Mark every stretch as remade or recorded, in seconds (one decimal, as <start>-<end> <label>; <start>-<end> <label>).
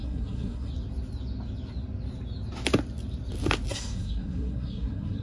0.0-0.7 remade; 0.7-3.7 recorded; 3.7-5.2 remade